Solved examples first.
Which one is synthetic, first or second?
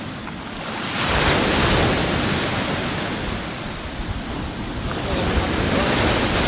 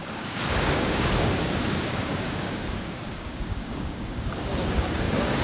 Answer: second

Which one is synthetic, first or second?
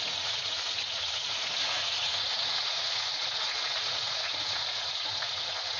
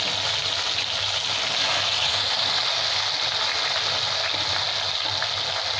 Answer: first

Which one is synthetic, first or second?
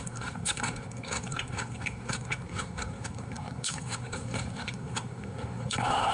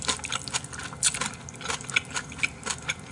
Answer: first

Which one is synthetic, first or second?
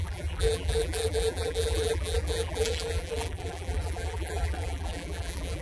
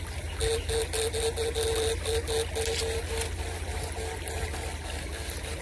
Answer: first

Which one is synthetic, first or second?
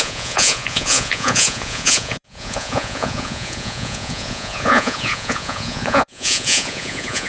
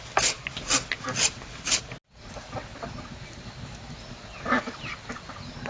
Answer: first